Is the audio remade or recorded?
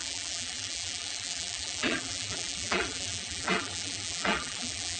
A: remade